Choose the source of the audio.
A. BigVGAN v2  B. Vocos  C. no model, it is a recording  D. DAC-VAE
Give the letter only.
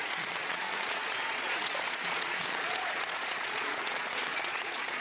B